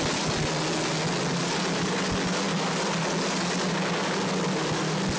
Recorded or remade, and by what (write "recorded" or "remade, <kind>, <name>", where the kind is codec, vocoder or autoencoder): recorded